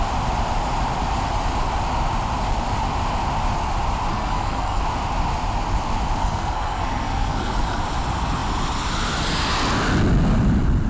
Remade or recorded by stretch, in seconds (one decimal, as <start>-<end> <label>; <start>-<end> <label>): 0.0-4.1 recorded; 4.1-4.8 remade; 4.8-6.2 recorded; 6.2-7.8 remade; 7.8-10.9 recorded